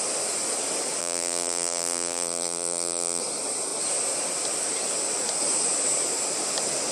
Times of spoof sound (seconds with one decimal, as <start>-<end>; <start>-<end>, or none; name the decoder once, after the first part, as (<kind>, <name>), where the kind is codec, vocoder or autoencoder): 1.0-3.2 (vocoder, BigVGAN v2)